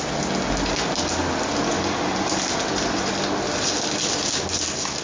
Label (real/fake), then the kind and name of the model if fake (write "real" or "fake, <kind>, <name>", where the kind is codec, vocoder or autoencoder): real